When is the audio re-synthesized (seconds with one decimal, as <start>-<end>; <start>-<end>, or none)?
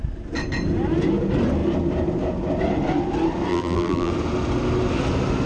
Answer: 3.5-4.1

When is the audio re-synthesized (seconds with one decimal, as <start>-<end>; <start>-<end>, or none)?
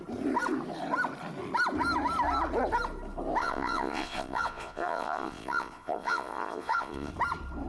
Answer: 3.4-7.1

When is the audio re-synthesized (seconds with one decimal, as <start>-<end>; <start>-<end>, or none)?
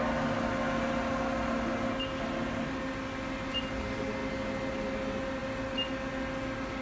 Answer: none